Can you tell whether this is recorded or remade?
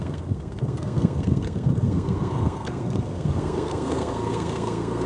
remade